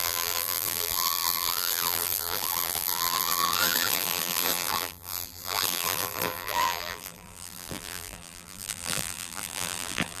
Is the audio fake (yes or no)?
yes